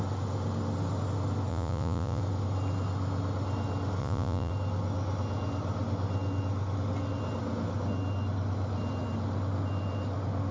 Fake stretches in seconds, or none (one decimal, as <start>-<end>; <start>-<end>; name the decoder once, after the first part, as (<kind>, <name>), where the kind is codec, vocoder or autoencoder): 1.5-2.2 (vocoder, Vocos); 4.0-4.5